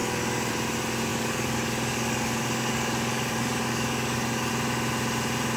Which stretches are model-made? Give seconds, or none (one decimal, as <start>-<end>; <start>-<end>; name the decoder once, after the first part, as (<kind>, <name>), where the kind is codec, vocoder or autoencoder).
0.0-0.5 (codec, DAC); 1.1-4.5